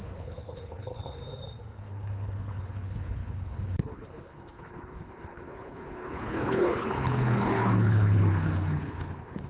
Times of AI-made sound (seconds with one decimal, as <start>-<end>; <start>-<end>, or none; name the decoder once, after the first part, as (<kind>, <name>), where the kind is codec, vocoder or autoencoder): 0.0-1.2 (codec, HILCodec); 1.9-9.5